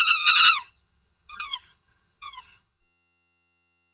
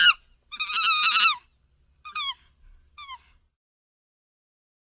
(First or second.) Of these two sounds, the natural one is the second